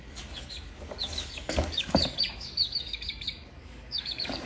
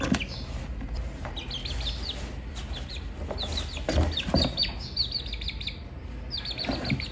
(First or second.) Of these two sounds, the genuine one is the second